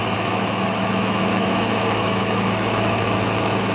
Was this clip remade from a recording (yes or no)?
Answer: yes